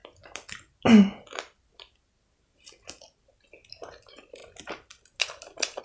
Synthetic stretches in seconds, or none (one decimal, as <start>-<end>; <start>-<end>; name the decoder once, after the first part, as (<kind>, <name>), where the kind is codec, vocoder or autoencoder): none